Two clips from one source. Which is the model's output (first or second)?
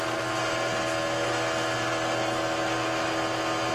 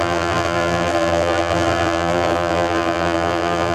second